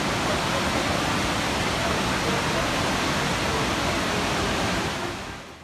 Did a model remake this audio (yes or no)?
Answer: no